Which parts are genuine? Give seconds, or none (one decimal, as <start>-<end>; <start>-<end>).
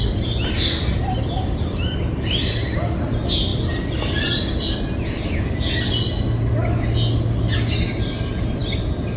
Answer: 0.0-9.2